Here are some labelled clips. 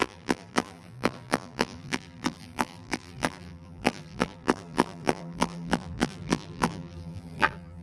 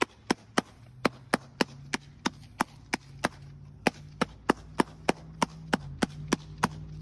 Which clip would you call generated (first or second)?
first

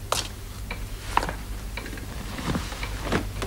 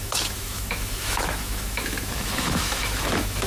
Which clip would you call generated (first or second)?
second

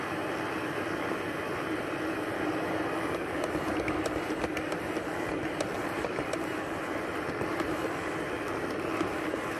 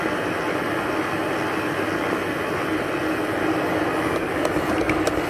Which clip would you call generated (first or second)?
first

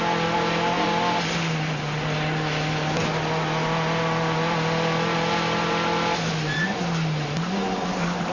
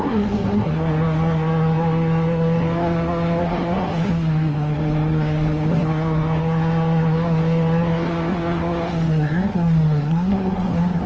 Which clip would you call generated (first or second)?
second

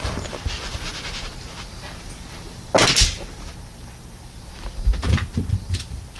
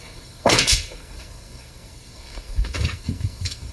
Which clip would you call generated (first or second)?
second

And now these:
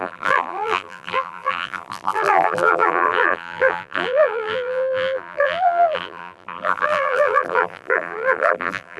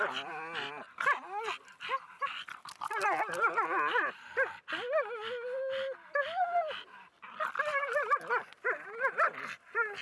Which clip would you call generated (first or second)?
first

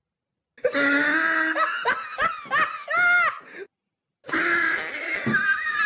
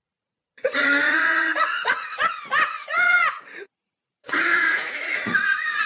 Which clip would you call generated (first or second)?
second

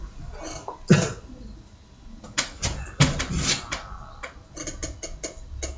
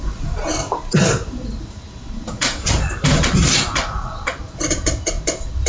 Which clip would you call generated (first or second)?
second